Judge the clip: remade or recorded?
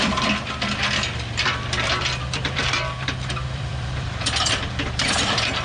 remade